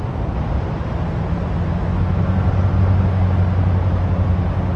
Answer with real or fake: real